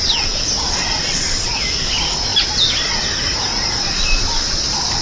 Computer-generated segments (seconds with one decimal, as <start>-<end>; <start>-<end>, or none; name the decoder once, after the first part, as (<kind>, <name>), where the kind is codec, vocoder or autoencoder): none